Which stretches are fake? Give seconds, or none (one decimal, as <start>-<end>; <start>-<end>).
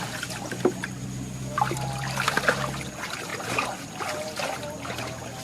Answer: none